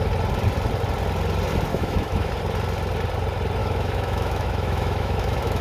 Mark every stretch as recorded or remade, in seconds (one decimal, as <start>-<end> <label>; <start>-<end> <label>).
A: 0.0-1.7 recorded; 1.7-2.3 remade; 2.3-3.6 recorded; 3.6-5.6 remade